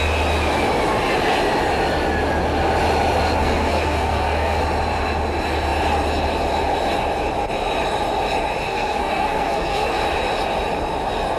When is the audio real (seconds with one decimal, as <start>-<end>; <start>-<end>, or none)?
0.0-3.4; 4.6-8.7; 9.9-11.4